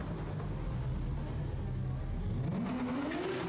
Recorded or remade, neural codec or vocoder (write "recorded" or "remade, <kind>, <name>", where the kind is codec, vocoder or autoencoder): recorded